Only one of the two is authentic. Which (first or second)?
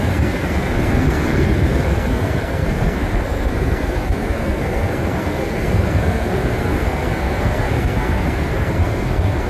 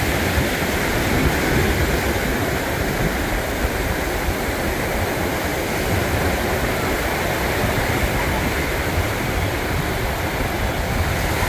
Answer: second